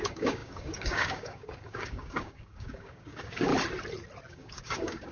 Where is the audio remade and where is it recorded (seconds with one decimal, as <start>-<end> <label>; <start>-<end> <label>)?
0.0-3.5 remade; 3.5-4.3 recorded; 4.3-5.1 remade